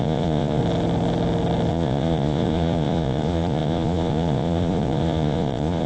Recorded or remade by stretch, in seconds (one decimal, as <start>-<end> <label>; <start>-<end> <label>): 0.0-0.6 remade; 0.6-1.7 recorded; 1.7-5.9 remade